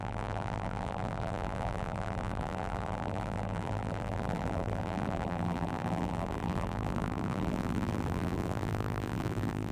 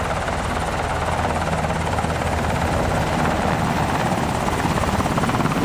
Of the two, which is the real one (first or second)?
second